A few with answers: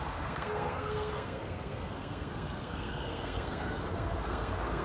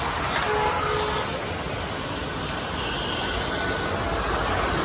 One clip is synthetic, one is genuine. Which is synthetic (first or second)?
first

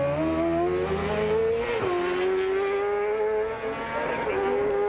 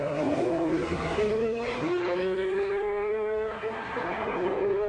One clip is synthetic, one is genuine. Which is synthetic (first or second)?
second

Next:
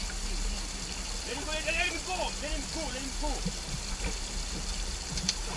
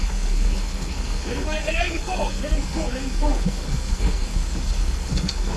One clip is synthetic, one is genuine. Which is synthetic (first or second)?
second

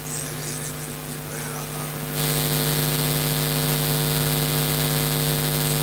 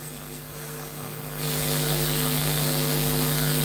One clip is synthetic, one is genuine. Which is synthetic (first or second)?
second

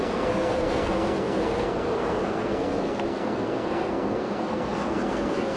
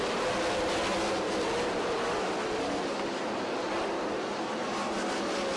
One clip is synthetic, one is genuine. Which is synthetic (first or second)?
first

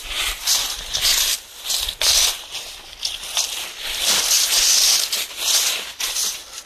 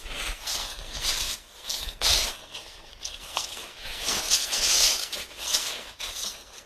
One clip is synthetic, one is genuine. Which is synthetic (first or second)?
second